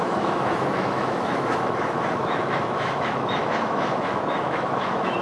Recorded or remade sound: remade